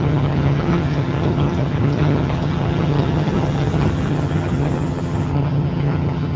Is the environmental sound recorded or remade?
remade